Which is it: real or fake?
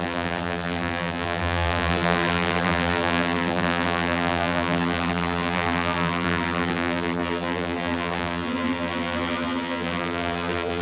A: fake